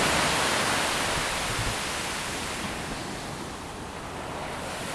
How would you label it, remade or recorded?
recorded